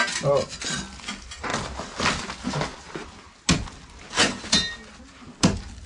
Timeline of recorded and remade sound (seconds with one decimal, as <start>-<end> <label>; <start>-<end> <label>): 0.0-5.9 recorded